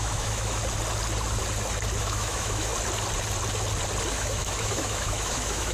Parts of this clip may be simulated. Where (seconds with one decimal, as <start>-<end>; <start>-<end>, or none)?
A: 0.0-0.6; 2.0-2.7; 4.1-5.7